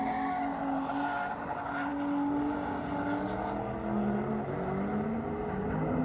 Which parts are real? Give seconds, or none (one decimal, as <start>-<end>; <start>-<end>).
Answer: 0.0-6.0